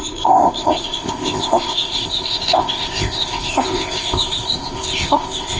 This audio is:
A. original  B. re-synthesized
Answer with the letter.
B